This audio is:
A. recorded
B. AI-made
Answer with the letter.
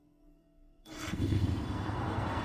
B